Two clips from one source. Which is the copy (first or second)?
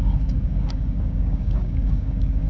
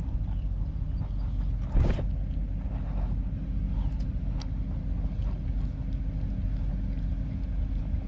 first